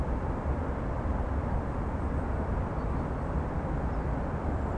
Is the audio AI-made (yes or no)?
yes